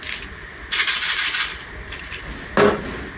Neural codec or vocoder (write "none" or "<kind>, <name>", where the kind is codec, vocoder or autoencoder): none